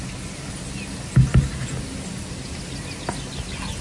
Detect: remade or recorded recorded